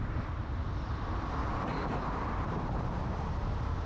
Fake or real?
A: fake